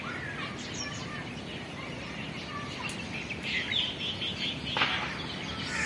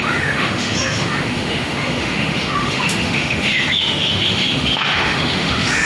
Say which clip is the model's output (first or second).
second